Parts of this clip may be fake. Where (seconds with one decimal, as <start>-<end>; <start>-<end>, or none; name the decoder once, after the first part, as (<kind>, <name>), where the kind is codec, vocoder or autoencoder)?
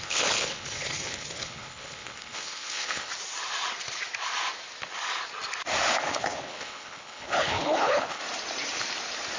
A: 0.0-3.1 (codec, HILCodec); 6.0-8.2